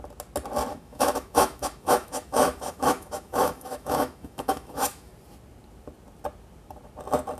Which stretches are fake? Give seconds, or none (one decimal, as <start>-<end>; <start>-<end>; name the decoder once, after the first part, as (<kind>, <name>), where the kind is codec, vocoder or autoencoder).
0.7-5.1 (autoencoder, DAC-VAE)